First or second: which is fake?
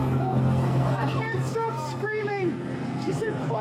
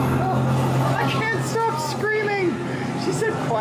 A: first